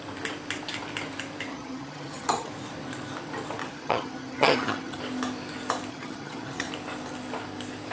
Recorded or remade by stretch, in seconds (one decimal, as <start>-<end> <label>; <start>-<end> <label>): 0.0-1.5 recorded; 1.5-2.5 remade; 2.5-3.6 recorded; 3.6-5.0 remade; 5.0-5.9 recorded; 5.9-6.7 remade; 6.7-7.9 recorded